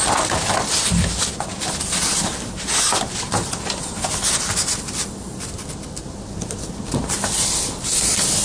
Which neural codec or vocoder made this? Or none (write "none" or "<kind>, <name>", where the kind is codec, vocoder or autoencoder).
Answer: none